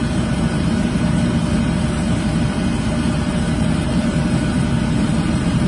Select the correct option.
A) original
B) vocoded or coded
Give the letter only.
B